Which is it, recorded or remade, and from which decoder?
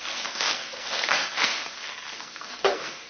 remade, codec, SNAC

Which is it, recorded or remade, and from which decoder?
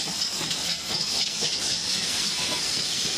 remade, codec, SNAC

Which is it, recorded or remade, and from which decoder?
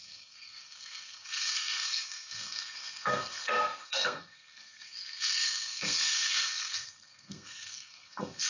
remade, codec, SNAC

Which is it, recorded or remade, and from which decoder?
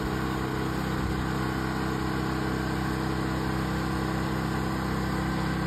recorded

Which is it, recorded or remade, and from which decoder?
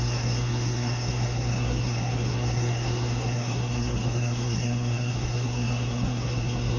remade, codec, SNAC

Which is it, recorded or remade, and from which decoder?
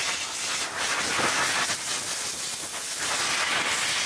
recorded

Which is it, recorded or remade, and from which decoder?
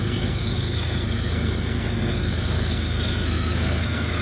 remade, codec, SNAC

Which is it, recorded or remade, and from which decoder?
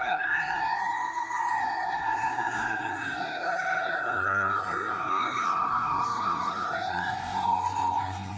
remade, codec, SNAC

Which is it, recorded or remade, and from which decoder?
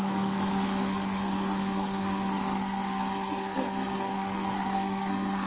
remade, codec, SNAC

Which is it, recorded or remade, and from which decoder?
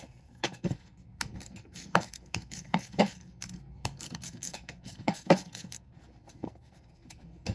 remade, codec, SNAC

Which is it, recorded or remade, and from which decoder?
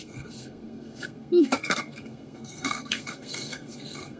remade, codec, SNAC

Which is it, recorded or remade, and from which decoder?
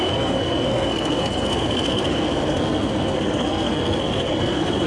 remade, codec, SNAC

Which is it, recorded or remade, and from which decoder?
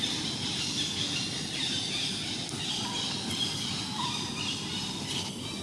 recorded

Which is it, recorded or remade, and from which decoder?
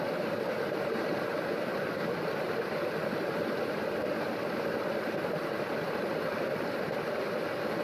recorded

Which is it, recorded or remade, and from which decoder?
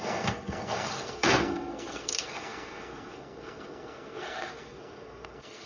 remade, codec, SNAC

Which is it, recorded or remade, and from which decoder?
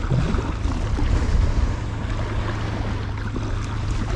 recorded